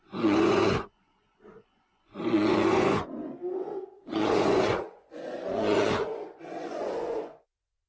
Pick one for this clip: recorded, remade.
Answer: remade